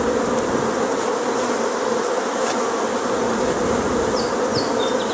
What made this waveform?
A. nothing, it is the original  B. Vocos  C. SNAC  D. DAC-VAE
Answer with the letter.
A